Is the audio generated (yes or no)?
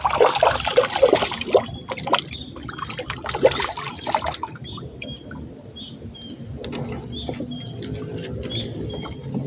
no